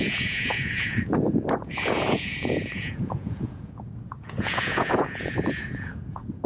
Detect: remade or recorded remade